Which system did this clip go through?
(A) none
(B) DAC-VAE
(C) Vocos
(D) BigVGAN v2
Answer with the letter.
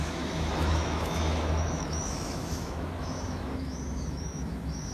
B